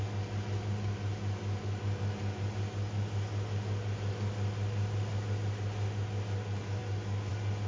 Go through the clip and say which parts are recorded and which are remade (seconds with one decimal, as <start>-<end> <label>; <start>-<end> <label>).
0.0-7.7 recorded